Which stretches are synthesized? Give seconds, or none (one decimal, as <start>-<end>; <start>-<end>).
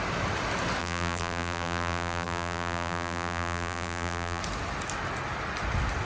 0.8-4.4